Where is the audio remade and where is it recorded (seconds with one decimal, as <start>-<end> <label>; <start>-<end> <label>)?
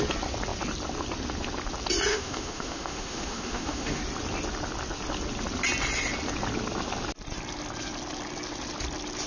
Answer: 0.0-2.1 recorded; 2.1-4.0 remade; 4.0-9.3 recorded